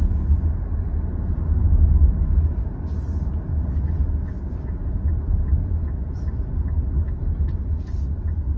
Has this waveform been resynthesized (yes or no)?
no